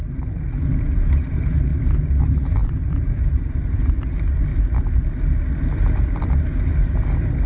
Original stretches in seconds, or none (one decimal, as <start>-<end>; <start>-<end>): 0.0-0.6; 1.7-2.2; 4.5-5.6